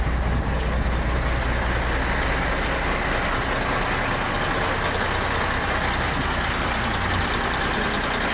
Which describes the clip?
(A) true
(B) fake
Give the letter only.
A